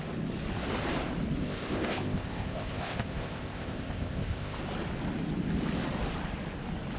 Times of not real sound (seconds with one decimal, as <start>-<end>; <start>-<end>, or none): 1.4-4.6